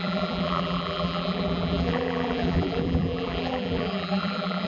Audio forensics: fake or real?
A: fake